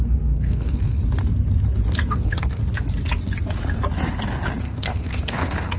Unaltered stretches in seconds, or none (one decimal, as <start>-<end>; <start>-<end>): 1.0-2.1; 2.6-4.6